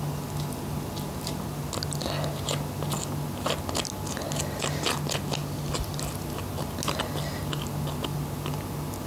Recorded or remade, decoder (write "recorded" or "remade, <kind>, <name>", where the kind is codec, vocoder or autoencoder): recorded